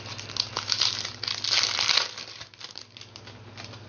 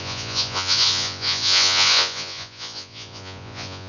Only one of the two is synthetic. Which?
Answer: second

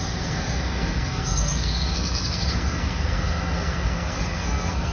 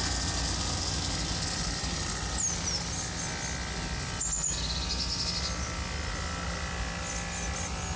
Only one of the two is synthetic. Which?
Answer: first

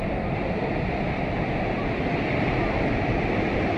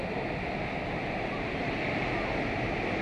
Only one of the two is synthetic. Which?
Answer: first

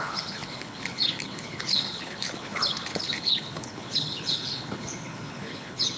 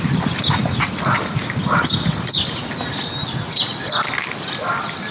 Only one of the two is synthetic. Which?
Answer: first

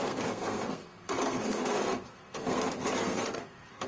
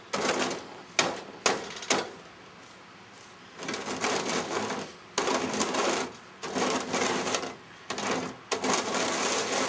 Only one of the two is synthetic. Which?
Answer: first